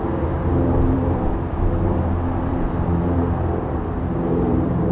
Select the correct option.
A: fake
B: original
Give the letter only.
A